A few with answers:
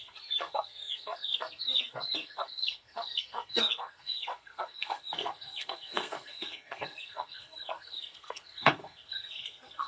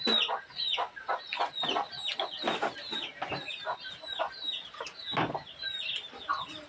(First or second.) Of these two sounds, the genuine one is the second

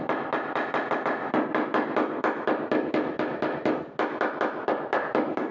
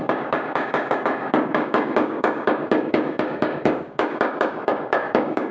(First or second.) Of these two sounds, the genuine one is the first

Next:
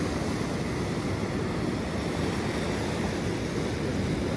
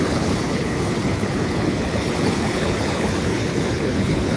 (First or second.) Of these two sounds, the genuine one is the first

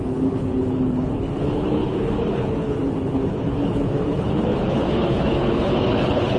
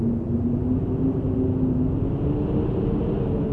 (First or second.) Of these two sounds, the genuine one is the second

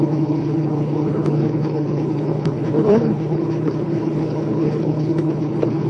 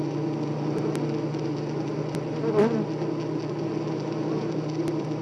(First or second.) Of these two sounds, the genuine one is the second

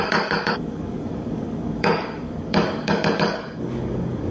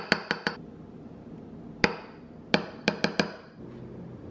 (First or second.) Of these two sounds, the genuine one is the second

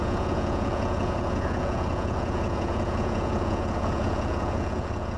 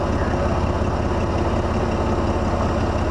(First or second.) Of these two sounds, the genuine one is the second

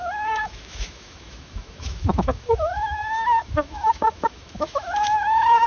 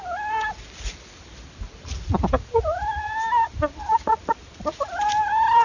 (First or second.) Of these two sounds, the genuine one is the second